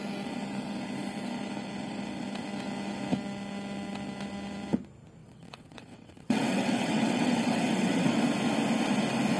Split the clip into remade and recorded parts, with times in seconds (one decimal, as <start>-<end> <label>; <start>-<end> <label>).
0.0-5.2 recorded; 5.2-8.2 remade; 8.2-9.4 recorded